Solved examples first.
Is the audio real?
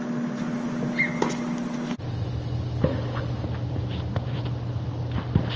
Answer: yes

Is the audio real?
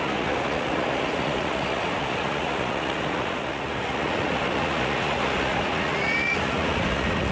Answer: no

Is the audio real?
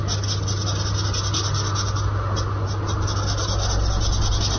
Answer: yes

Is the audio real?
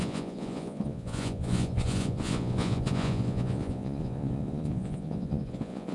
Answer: no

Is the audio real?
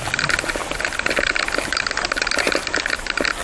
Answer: yes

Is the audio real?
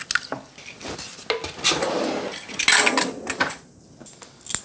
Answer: yes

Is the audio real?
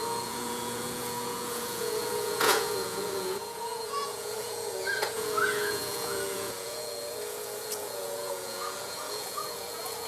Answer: no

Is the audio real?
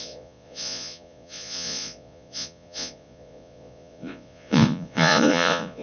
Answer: no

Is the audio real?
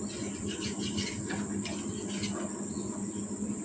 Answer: yes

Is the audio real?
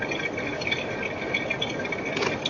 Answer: yes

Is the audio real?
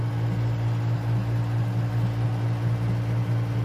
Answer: yes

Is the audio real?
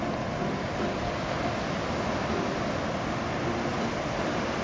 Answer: yes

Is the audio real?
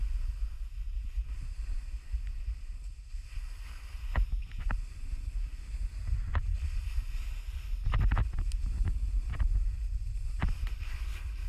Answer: yes